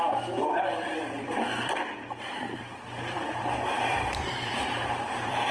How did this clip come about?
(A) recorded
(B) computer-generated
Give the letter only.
B